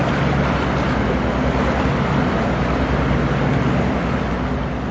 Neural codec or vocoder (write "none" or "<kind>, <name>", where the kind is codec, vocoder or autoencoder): none